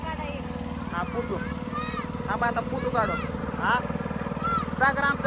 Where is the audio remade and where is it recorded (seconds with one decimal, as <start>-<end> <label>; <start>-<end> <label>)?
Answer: 0.0-1.3 recorded; 1.3-3.4 remade; 3.4-5.3 recorded

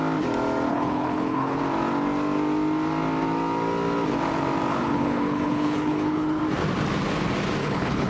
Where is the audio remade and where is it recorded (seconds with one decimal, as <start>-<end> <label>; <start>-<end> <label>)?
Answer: 0.0-0.7 recorded; 0.7-1.6 remade; 1.6-4.7 recorded; 4.7-6.4 remade; 6.4-7.6 recorded; 7.6-8.1 remade